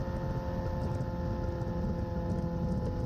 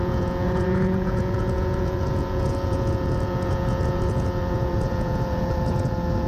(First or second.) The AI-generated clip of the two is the second